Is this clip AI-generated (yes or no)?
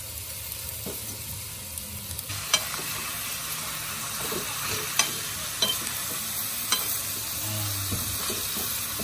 no